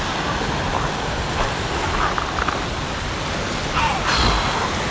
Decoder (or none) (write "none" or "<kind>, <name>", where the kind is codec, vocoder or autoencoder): none